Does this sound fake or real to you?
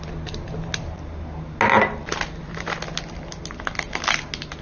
real